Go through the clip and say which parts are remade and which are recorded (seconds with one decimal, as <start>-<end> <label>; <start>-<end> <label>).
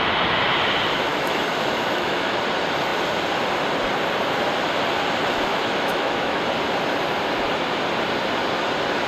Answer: 0.0-1.1 recorded; 1.1-2.4 remade; 2.4-5.5 recorded; 5.5-6.4 remade; 6.4-9.1 recorded